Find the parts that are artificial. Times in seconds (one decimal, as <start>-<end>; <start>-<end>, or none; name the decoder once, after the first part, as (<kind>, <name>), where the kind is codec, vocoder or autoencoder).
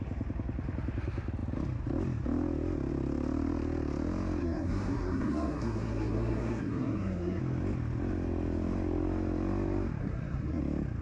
4.4-7.4 (codec, SNAC); 10.0-10.6